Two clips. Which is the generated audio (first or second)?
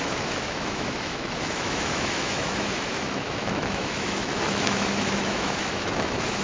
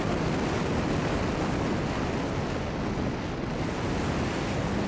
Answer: first